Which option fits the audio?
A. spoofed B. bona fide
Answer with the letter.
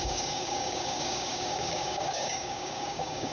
A